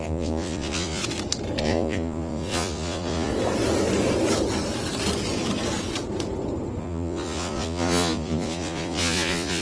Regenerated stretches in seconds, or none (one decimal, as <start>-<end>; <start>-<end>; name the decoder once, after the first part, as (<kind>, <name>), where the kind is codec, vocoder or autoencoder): 0.0-1.0 (vocoder, Vocos); 1.6-3.3; 6.8-9.6